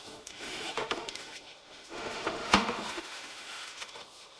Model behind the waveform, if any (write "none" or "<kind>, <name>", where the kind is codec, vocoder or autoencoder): autoencoder, DAC-VAE